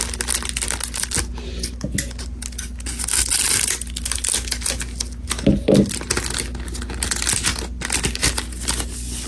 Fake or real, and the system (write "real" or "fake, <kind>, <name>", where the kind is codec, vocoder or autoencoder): real